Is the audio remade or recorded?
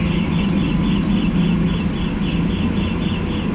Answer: recorded